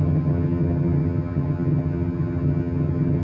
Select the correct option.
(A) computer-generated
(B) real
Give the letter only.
A